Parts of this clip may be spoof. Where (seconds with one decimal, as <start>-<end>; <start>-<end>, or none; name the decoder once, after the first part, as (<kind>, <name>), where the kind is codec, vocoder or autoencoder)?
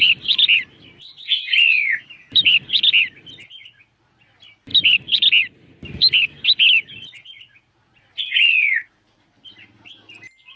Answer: none